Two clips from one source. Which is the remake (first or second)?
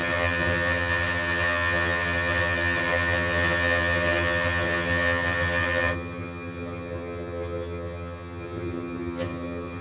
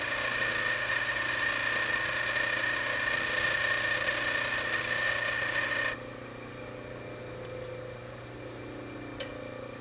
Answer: first